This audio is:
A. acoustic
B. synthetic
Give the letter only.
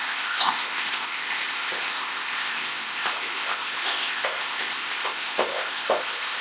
B